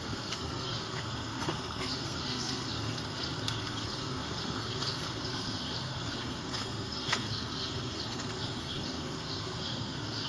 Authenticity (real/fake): fake